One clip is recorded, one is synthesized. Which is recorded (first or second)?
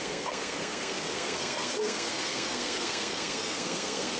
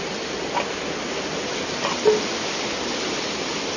second